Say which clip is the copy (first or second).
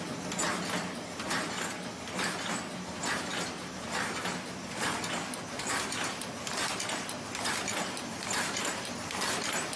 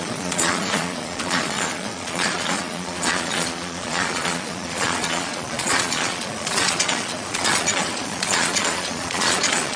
second